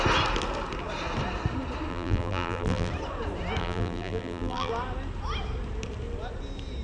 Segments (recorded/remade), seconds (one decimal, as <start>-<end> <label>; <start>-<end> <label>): 0.0-1.9 recorded; 1.9-2.9 remade; 2.9-3.6 recorded; 3.6-4.7 remade; 4.7-6.8 recorded